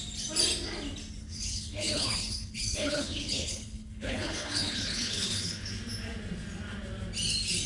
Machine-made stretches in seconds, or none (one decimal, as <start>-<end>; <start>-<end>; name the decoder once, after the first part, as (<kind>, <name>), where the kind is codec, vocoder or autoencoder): 1.2-5.7 (codec, HILCodec)